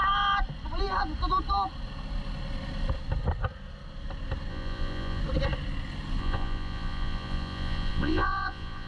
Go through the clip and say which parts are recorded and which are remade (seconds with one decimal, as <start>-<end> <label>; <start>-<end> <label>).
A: 0.0-4.5 recorded; 4.5-5.2 remade; 5.2-6.2 recorded; 6.2-8.9 remade